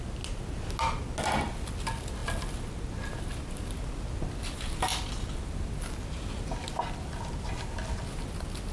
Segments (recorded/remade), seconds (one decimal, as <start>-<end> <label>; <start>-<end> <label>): 0.0-8.7 recorded